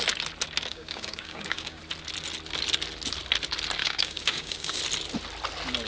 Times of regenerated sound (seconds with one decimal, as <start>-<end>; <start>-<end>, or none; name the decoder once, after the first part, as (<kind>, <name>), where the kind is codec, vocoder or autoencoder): 0.7-1.8 (codec, DAC); 3.8-4.8